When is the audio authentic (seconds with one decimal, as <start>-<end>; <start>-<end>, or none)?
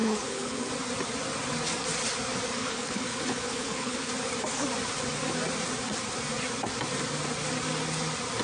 0.7-2.6; 4.1-8.4